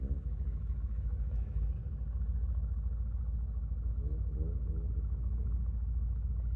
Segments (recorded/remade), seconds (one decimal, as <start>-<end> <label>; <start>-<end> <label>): 0.0-1.8 remade; 1.8-3.9 recorded; 3.9-6.6 remade